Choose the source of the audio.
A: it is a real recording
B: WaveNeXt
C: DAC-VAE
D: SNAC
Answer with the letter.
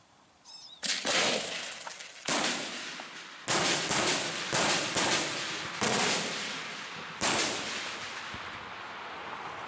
A